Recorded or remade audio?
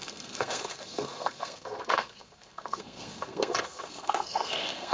remade